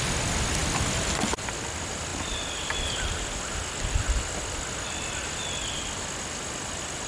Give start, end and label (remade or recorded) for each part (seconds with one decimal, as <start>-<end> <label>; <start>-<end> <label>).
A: 0.0-7.1 recorded